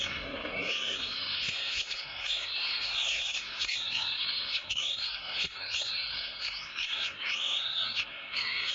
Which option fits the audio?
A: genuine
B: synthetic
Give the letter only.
B